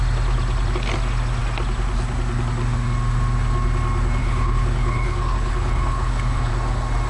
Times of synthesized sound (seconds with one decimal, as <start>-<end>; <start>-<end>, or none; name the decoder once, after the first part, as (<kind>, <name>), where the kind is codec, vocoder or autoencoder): 4.2-6.5 (codec, HILCodec)